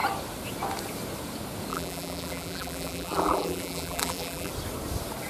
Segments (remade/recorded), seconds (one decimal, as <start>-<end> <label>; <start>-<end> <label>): 0.0-1.7 recorded; 1.7-4.5 remade; 4.5-5.3 recorded